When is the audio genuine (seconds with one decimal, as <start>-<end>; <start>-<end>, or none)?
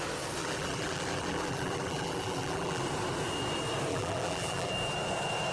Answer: 0.0-0.4; 2.8-3.9; 4.7-5.5